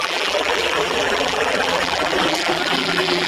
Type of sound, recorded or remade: remade